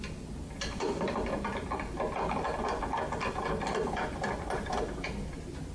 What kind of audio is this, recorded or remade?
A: recorded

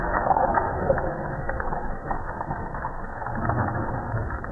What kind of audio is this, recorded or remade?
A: remade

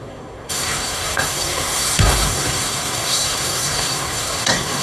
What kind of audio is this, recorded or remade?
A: remade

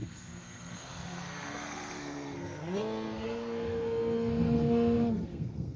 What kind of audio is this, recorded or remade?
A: remade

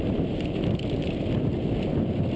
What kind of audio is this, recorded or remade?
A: recorded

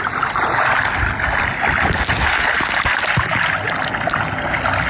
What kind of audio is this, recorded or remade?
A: recorded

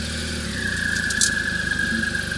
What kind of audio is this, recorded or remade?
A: recorded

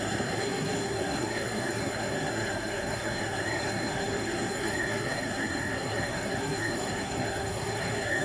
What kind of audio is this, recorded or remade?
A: remade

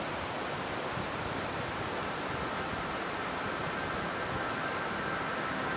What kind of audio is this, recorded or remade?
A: recorded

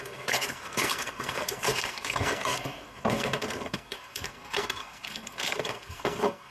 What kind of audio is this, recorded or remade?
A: remade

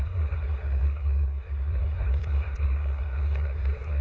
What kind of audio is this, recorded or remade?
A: remade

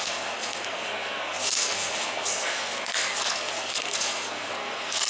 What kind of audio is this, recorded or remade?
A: remade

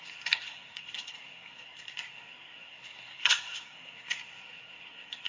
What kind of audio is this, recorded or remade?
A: remade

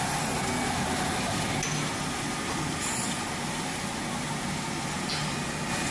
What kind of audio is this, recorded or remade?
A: recorded